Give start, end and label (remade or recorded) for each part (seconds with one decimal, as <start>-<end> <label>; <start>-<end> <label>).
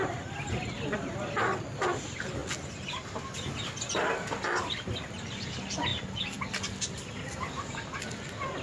0.0-8.6 recorded